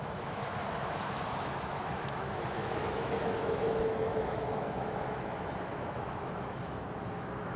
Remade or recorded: remade